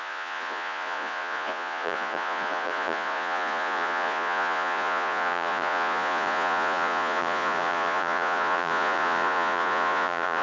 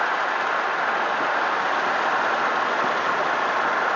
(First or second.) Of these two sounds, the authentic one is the second